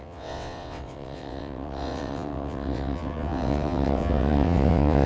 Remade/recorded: remade